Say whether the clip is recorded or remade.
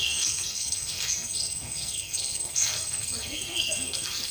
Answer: remade